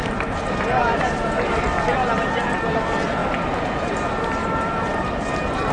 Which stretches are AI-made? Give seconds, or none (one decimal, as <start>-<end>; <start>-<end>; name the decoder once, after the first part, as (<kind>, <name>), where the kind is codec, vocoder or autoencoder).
4.4-5.1 (vocoder, BigVGAN v2)